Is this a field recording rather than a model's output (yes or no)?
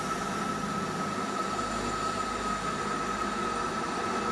yes